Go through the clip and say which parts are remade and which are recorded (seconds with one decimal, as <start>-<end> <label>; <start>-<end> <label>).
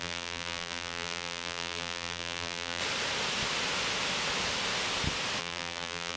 0.0-2.8 remade; 2.8-5.4 recorded; 5.4-6.2 remade